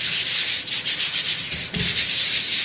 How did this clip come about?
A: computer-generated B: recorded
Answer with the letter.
A